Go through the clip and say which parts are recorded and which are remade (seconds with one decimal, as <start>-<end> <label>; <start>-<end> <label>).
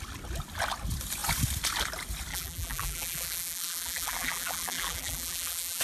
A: 0.0-2.3 recorded; 2.3-5.8 remade